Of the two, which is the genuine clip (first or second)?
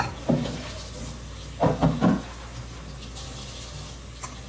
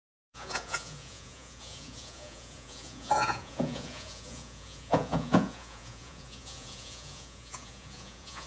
first